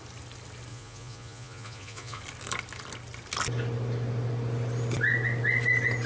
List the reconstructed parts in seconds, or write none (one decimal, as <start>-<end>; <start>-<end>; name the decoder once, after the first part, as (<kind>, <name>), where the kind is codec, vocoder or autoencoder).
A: 0.7-2.2 (vocoder, Vocos)